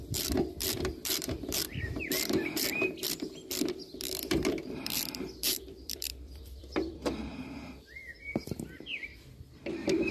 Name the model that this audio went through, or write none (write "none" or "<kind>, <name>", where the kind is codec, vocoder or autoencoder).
vocoder, BigVGAN v2